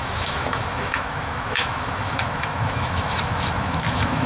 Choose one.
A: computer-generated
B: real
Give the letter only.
A